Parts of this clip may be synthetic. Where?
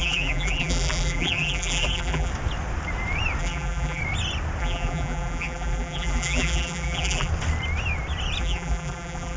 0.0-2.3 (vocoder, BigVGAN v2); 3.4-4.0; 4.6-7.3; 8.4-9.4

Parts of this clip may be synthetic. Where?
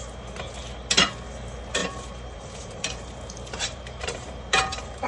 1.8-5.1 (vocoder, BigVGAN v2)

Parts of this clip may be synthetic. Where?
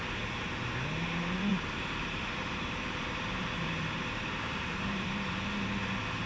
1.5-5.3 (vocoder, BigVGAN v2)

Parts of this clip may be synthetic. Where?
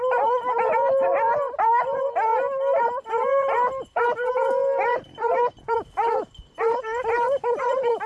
0.0-2.3 (vocoder, BigVGAN v2); 2.8-8.1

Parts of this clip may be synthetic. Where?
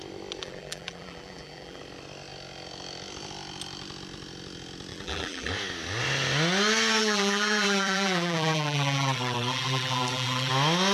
0.4-1.8 (vocoder, BigVGAN v2); 4.9-5.5; 7.0-10.5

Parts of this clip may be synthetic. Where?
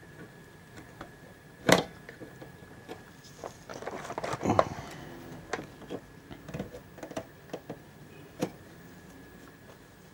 0.0-3.7 (vocoder, BigVGAN v2); 7.8-10.1